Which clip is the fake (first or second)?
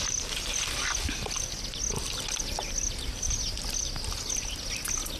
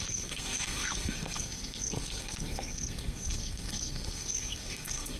second